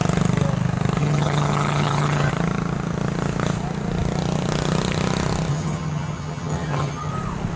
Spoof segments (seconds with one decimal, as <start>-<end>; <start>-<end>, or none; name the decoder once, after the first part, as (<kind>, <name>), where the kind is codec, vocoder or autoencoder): 1.0-2.3 (vocoder, HiFi-GAN); 5.5-7.1